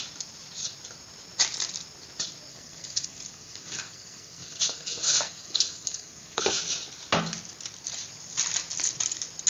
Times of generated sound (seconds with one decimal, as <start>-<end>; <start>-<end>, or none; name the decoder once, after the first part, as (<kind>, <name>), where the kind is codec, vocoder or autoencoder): 2.5-6.7 (codec, SNAC)